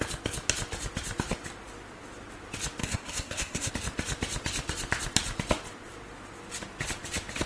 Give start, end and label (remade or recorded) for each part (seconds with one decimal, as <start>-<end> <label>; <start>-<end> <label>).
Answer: 0.0-2.8 recorded; 2.8-3.7 remade; 3.7-7.5 recorded